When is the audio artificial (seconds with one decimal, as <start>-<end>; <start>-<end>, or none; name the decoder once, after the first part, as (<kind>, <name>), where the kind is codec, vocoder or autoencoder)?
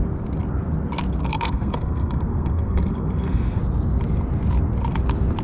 1.2-3.6 (codec, SNAC)